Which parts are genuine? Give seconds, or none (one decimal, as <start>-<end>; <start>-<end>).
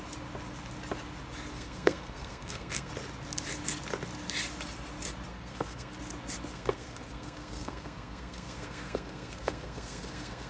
0.0-1.5; 2.9-5.3; 6.0-6.5